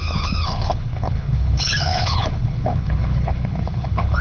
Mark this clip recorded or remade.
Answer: remade